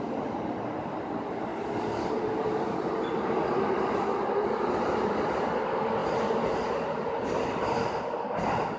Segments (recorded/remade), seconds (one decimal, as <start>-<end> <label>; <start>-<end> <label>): 0.0-8.8 recorded